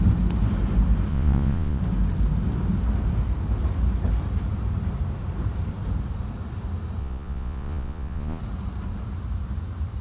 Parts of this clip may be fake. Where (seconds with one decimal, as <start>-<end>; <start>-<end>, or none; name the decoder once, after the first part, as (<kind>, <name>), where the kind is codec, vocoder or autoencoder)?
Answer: 1.1-1.8 (vocoder, Vocos); 7.0-8.4